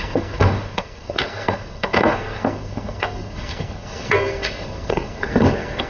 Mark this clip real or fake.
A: fake